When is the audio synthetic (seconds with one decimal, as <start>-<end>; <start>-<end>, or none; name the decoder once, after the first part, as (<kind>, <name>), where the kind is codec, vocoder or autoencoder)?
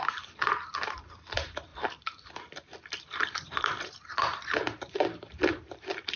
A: 0.0-6.2 (vocoder, BigVGAN v2)